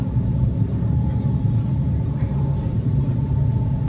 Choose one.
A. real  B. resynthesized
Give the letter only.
A